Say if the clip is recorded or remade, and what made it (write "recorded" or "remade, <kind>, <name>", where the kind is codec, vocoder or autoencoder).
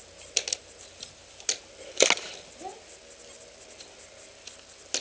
recorded